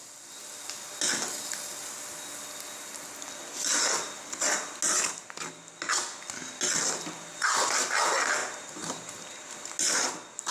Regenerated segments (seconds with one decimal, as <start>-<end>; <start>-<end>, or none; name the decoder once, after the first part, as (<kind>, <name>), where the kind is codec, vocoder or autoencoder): 8.4-9.5 (vocoder, BigVGAN v2)